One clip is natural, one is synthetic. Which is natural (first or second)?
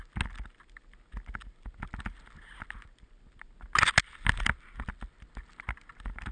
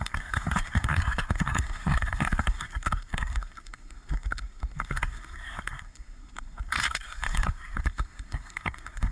first